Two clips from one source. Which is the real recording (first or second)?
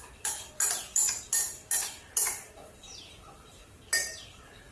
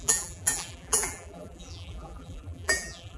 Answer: first